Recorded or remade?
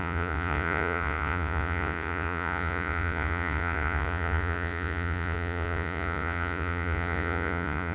remade